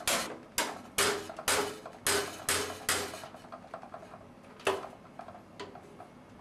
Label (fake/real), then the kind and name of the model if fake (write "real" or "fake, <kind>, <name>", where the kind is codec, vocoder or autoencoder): real